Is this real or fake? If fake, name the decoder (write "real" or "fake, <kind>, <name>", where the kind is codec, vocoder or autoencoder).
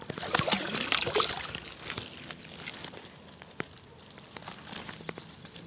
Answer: fake, vocoder, BigVGAN v2